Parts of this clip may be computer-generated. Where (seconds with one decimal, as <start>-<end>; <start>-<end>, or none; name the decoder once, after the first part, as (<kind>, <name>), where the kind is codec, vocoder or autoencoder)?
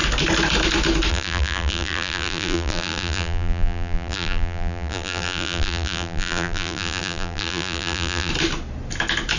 1.1-8.3 (vocoder, BigVGAN v2)